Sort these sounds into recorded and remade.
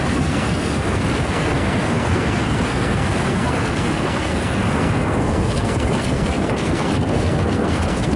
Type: remade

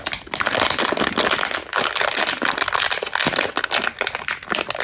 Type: recorded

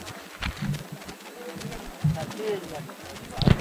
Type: recorded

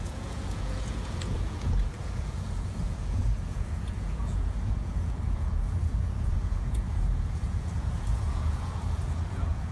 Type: remade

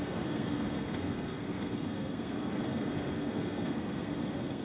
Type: remade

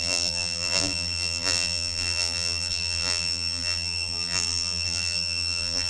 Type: remade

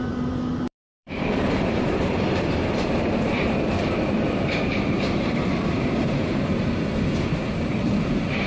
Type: remade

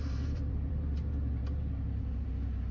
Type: remade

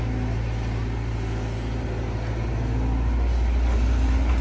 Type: recorded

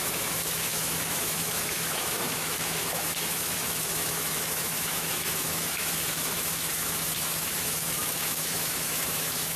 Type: remade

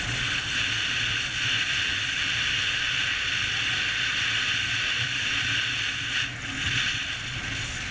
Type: recorded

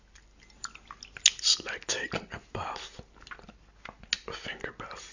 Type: recorded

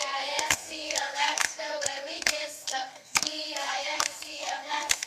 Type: remade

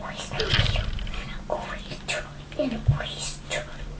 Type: recorded